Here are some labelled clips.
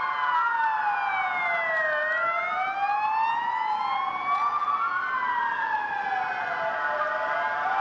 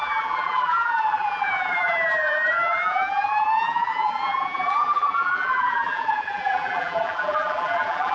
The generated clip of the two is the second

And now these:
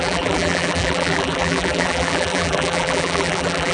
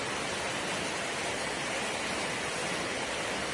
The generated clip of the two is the first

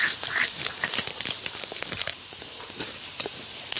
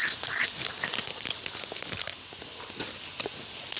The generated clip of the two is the first